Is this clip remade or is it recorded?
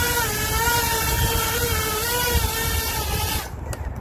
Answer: recorded